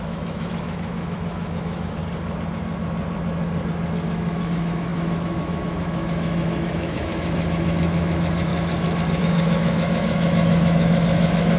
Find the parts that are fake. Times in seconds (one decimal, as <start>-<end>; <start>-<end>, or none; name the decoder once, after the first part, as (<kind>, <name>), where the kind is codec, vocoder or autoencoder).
0.0-2.0 (autoencoder, DAC-VAE); 4.4-8.5; 9.2-11.6